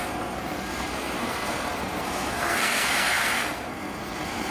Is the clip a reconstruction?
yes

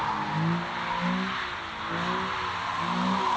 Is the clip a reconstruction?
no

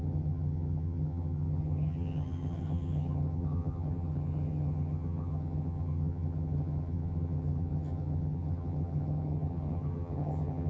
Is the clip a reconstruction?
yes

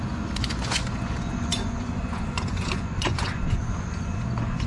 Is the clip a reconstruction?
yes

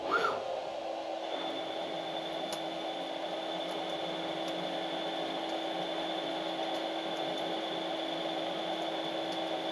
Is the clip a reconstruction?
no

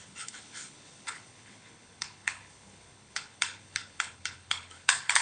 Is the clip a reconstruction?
yes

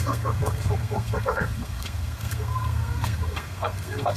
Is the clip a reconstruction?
yes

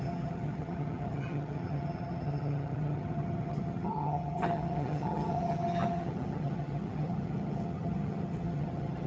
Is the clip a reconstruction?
yes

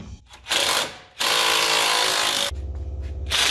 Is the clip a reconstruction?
no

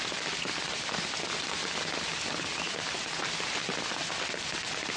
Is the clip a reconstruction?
no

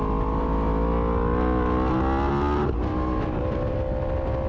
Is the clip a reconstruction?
no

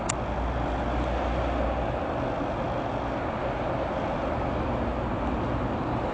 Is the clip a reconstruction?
no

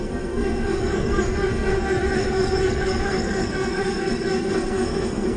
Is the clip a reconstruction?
yes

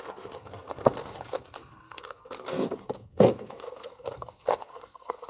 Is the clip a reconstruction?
yes